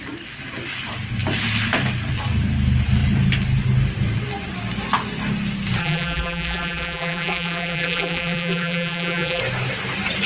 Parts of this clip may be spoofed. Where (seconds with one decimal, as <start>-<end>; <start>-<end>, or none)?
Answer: 5.8-9.4